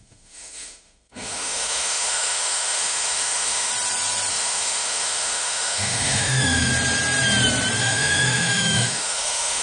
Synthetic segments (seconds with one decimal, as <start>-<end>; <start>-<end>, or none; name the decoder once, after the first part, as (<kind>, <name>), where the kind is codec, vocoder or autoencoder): 0.0-3.7 (autoencoder, DAC-VAE); 4.3-6.7; 7.8-9.6